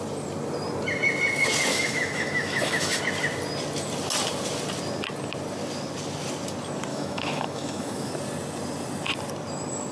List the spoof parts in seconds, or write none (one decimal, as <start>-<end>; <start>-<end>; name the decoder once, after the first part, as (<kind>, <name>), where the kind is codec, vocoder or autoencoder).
1.7-3.0 (autoencoder, DAC-VAE); 6.9-8.1